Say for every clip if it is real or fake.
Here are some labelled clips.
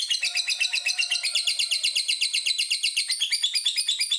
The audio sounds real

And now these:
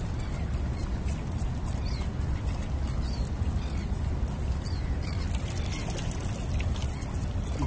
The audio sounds real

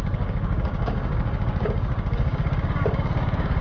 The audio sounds fake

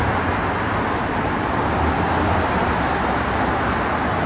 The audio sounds real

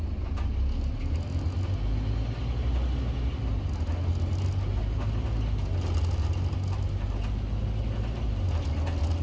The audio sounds real